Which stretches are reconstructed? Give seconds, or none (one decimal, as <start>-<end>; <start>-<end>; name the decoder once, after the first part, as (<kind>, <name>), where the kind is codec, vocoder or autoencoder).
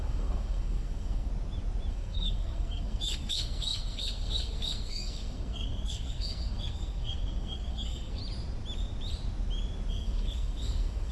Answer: 0.0-1.3 (codec, SNAC); 1.9-8.2; 9.9-11.1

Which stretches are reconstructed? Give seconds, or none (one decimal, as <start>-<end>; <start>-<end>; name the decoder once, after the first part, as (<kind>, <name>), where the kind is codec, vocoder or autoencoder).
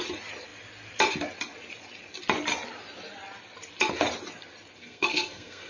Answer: 4.8-5.7 (codec, SNAC)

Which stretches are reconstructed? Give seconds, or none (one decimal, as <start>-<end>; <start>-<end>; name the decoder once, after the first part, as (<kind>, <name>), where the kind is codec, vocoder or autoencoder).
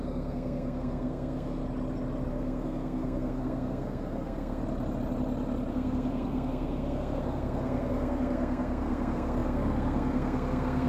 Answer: 0.0-1.6 (codec, SNAC); 2.3-4.6; 5.7-10.9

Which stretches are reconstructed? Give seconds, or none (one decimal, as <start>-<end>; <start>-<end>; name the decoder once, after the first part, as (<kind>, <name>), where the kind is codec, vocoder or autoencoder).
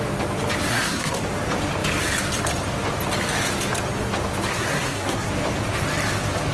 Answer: 0.7-1.3 (codec, SNAC); 4.5-5.3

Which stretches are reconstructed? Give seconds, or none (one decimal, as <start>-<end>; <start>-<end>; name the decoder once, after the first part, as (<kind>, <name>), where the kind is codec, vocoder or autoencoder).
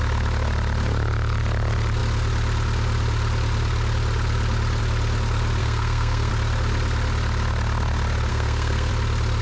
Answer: 5.6-6.3 (codec, SNAC); 8.3-8.9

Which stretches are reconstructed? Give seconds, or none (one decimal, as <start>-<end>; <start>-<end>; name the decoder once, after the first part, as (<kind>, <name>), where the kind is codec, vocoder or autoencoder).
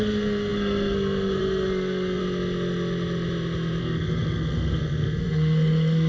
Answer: 0.0-2.2 (codec, SNAC); 3.8-6.1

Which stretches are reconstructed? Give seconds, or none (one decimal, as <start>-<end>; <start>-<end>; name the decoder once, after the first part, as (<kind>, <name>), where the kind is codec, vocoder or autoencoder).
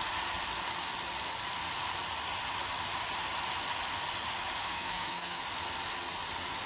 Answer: 4.6-5.4 (codec, SNAC)